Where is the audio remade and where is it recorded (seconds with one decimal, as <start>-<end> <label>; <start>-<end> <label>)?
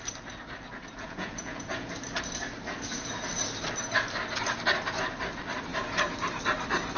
0.0-0.8 recorded; 0.8-1.9 remade; 1.9-7.0 recorded